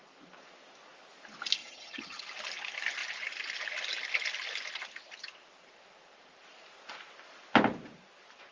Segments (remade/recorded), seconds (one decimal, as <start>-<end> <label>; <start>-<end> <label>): 0.0-1.6 recorded; 1.6-2.2 remade; 2.2-8.5 recorded